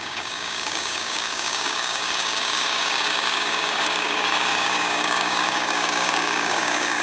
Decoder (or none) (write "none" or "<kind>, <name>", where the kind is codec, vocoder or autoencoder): codec, DAC